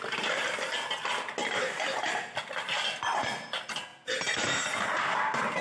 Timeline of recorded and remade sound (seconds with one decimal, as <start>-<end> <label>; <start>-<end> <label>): 0.0-5.6 recorded

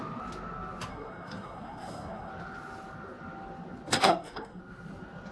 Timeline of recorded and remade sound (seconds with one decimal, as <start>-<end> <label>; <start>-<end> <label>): 0.0-0.9 recorded; 0.9-2.3 remade; 2.3-3.9 recorded; 3.9-4.6 remade; 4.6-5.3 recorded

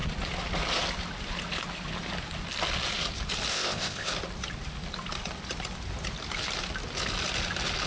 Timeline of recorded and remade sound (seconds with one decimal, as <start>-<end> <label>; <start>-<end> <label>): 0.0-3.5 recorded; 3.5-4.1 remade; 4.1-7.9 recorded

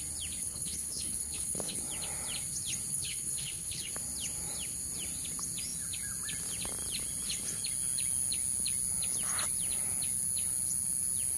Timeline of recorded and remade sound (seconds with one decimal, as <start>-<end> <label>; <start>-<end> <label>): 0.0-0.4 recorded; 0.4-1.8 remade; 1.8-2.9 recorded; 2.9-3.9 remade; 3.9-11.4 recorded

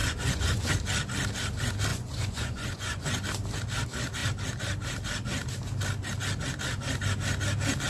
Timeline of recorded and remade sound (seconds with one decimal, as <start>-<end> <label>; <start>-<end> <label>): 0.0-0.7 remade; 0.7-1.9 recorded; 1.9-3.2 remade; 3.2-7.9 recorded